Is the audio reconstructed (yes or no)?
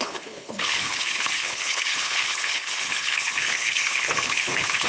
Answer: yes